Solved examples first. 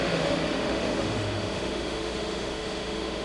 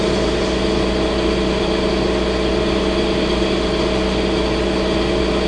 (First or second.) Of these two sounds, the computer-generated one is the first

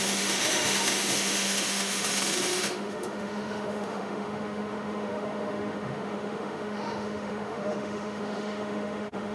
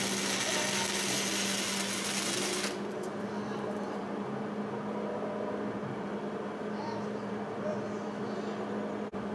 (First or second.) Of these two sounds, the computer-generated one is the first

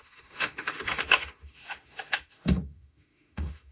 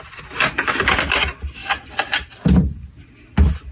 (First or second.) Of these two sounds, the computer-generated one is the first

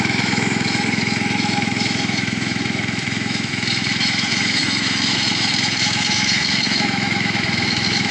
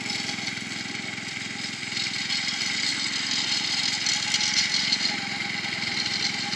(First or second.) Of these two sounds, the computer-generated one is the first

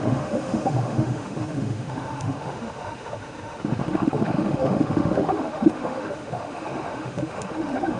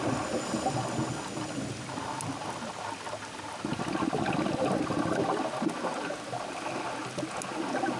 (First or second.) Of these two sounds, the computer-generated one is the first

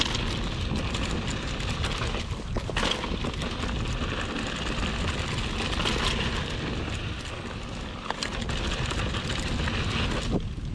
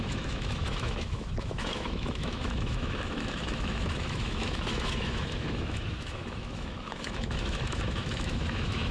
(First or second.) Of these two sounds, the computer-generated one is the second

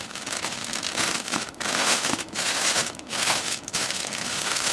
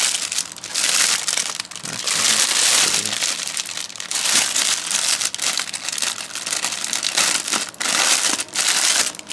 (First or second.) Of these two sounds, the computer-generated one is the first